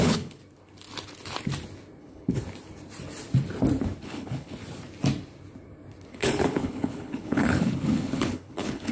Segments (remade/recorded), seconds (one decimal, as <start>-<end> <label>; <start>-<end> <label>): 0.0-0.4 remade; 0.4-2.0 recorded; 2.0-2.4 remade; 2.4-4.0 recorded; 4.0-4.6 remade; 4.6-6.1 recorded; 6.1-8.9 remade

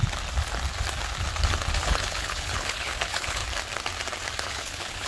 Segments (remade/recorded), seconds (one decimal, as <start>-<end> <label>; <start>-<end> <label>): 0.0-1.8 recorded; 1.8-3.4 remade; 3.4-4.4 recorded; 4.4-5.1 remade

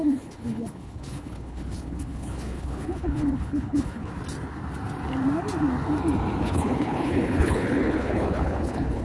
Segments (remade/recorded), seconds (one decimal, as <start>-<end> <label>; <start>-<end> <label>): 0.0-4.1 remade; 4.1-6.4 recorded; 6.4-9.0 remade

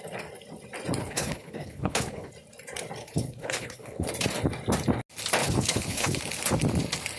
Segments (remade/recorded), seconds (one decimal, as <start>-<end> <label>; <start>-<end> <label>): 0.0-1.0 recorded; 1.0-2.3 remade; 2.3-3.0 recorded; 3.0-4.1 remade; 4.1-5.4 recorded; 5.4-6.2 remade; 6.2-7.2 recorded

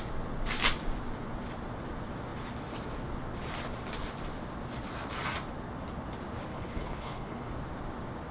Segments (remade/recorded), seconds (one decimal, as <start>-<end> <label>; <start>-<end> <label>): 0.0-6.5 recorded; 6.5-7.5 remade; 7.5-8.3 recorded

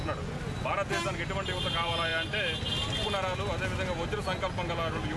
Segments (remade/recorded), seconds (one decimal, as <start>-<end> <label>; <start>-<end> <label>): 0.0-5.2 recorded

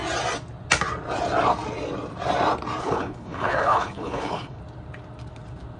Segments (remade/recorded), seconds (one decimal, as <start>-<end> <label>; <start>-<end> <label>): 0.0-2.8 recorded; 2.8-4.6 remade; 4.6-5.8 recorded